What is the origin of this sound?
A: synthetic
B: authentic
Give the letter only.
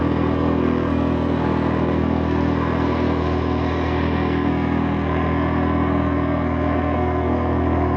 A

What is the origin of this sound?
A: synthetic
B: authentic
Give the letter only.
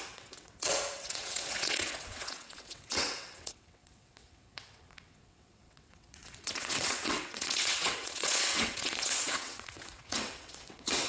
A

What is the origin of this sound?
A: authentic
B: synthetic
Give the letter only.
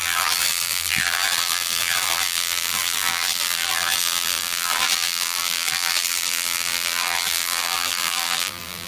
B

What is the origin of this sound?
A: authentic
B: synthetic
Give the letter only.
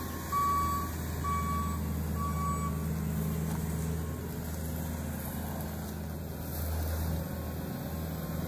A